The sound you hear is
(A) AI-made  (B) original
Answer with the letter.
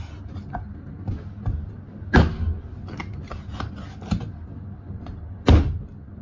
B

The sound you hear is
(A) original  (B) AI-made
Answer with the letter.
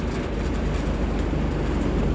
A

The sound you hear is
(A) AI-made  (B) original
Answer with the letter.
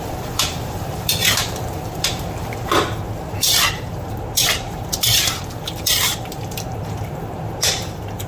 A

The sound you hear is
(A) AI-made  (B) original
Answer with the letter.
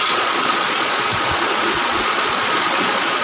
A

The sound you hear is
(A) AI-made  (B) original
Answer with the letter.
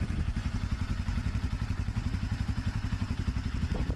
A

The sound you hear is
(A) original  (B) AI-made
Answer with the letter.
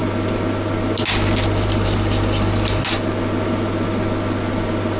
A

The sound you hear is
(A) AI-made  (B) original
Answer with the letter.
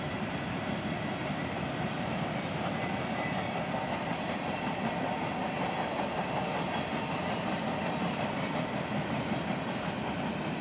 A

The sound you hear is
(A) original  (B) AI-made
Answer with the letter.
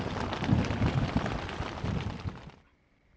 A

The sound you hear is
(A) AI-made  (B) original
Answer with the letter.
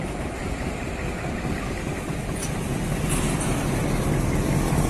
B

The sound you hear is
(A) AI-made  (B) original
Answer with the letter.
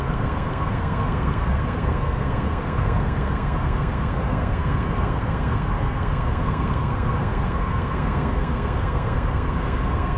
A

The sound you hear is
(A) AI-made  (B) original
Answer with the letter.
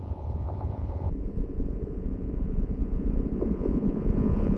A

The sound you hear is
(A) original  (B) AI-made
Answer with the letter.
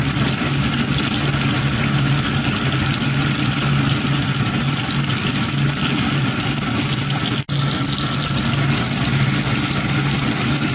A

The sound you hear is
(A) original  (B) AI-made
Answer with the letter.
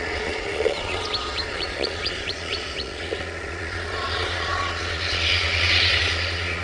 B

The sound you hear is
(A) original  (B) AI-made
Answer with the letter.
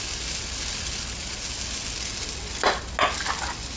A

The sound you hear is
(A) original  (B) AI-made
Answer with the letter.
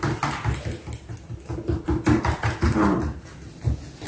A